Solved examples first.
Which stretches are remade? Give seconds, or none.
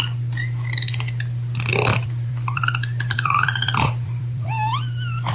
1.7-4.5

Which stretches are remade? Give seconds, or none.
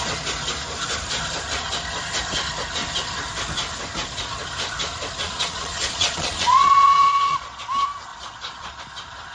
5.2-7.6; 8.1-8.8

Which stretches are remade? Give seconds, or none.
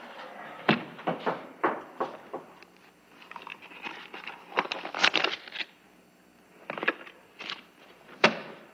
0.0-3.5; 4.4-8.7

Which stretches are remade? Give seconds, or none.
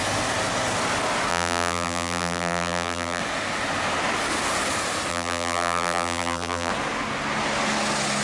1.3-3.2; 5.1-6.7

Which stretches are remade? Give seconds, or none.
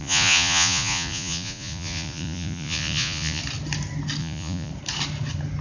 0.0-3.4; 4.2-4.7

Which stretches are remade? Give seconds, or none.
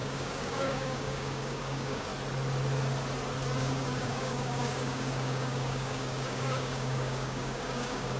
0.0-2.1; 3.6-8.2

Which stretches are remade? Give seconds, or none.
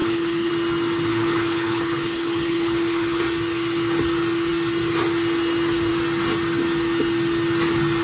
0.0-0.5; 1.1-3.2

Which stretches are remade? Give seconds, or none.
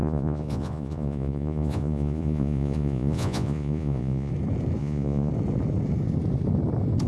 0.0-4.3; 4.8-5.3